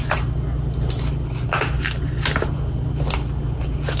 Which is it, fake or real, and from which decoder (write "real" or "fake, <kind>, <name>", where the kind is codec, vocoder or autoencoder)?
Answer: real